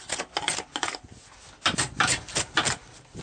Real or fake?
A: real